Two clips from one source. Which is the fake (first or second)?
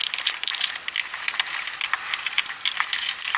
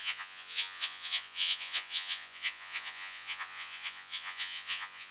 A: second